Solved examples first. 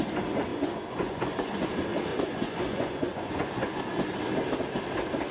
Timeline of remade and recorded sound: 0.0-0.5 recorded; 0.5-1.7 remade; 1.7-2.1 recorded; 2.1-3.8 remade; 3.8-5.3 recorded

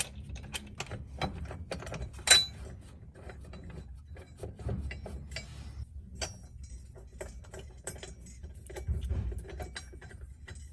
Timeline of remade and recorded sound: 0.0-10.7 recorded